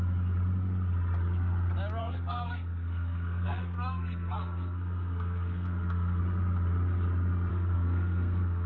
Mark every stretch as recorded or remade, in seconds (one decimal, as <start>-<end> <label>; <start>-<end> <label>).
0.0-2.0 recorded; 2.0-6.2 remade; 6.2-7.5 recorded; 7.5-8.7 remade